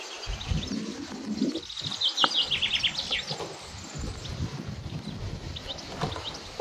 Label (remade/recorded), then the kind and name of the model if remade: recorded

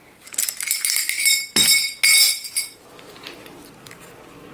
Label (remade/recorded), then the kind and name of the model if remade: recorded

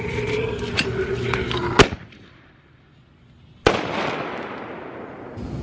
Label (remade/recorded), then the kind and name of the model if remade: recorded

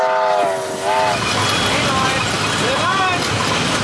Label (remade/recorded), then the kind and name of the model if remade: recorded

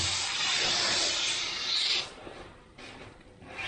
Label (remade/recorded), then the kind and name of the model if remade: remade, vocoder, BigVGAN v2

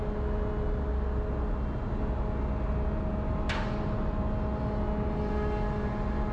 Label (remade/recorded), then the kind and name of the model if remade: recorded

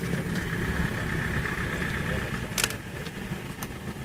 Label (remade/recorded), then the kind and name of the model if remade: recorded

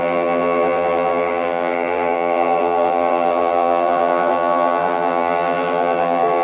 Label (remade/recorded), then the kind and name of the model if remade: remade, vocoder, BigVGAN v2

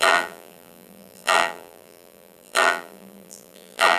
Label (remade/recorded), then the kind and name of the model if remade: remade, vocoder, BigVGAN v2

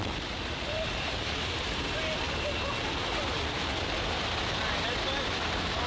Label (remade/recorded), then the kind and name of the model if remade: remade, vocoder, BigVGAN v2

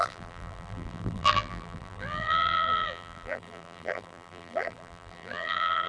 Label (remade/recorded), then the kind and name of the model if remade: remade, vocoder, BigVGAN v2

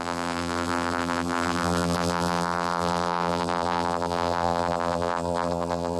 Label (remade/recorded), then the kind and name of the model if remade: remade, vocoder, BigVGAN v2